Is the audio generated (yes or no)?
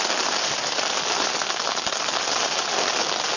no